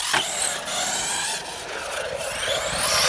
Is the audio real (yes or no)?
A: yes